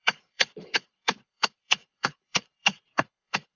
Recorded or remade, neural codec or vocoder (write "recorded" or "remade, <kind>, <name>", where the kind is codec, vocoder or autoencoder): remade, codec, HILCodec